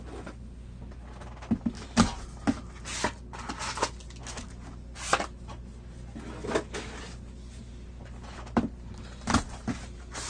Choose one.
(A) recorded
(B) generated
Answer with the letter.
A